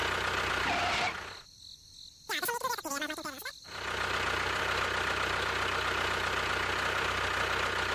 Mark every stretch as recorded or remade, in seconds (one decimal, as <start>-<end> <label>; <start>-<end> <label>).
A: 0.0-7.9 recorded